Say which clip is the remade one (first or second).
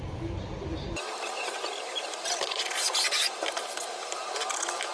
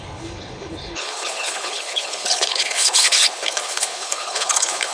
second